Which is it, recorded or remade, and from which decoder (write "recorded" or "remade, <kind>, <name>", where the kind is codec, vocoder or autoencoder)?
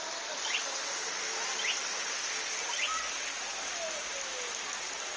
recorded